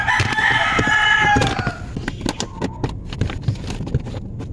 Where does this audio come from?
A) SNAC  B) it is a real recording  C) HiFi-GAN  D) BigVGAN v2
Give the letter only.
B